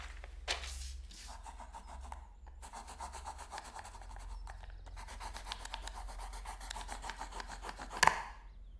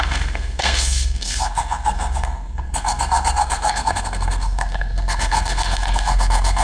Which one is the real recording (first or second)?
first